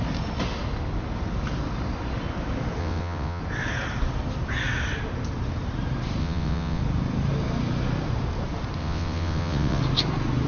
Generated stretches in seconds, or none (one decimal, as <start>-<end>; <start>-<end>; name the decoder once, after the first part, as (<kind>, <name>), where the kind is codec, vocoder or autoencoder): 2.8-3.4 (vocoder, WaveNeXt); 6.2-6.8; 8.8-9.8